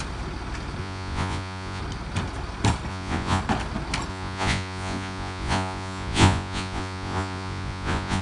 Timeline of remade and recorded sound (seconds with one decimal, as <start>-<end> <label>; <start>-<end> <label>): 0.0-0.8 recorded; 0.8-1.8 remade; 1.8-2.9 recorded; 2.9-3.4 remade; 3.4-4.1 recorded; 4.1-8.2 remade

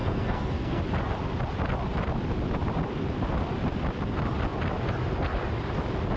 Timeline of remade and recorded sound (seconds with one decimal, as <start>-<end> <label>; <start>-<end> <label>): 0.0-0.8 remade; 0.8-6.2 recorded

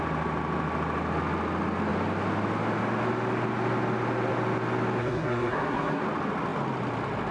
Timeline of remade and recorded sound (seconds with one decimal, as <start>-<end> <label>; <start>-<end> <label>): 0.0-5.0 recorded; 5.0-6.0 remade; 6.0-7.3 recorded

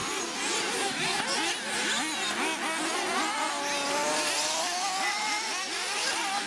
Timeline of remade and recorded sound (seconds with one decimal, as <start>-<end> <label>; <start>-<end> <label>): 0.0-6.5 recorded

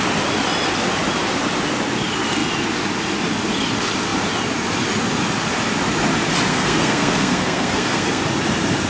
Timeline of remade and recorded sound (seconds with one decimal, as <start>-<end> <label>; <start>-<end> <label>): 0.0-6.5 recorded; 6.5-8.2 remade; 8.2-8.9 recorded